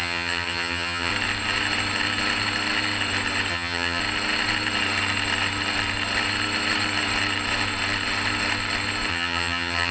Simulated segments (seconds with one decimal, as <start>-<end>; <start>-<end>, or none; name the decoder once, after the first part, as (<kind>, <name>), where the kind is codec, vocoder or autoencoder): 0.0-1.1 (vocoder, HiFi-GAN); 3.5-4.0; 9.1-9.9